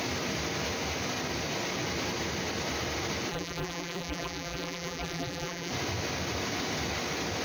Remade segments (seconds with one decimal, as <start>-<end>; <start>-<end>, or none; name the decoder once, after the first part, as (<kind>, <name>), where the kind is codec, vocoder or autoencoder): 3.3-5.7 (vocoder, BigVGAN v2)